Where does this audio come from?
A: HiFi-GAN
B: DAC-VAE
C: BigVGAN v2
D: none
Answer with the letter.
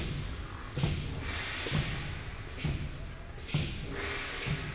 D